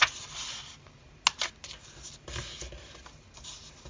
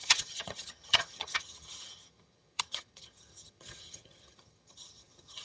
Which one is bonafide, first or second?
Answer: first